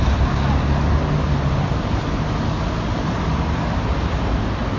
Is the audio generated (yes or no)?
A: no